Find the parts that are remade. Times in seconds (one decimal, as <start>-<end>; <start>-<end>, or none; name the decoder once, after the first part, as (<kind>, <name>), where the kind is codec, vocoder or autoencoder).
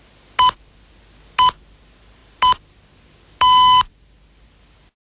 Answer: none